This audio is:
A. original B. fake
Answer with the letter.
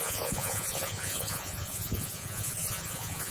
B